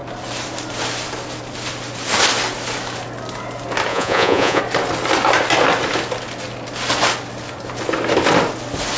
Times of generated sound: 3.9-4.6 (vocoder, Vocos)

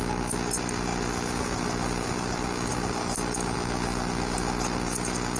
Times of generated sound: none